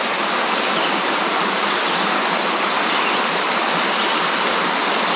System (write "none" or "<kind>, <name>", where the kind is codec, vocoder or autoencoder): none